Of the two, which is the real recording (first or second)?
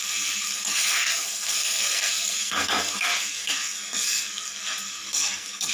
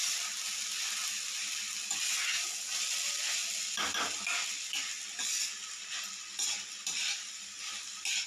second